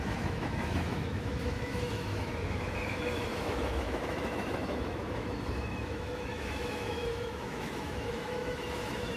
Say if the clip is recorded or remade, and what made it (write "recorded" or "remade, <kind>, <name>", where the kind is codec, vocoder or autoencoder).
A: remade, autoencoder, DAC-VAE